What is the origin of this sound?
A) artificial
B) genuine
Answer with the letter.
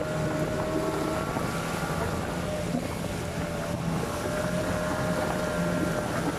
B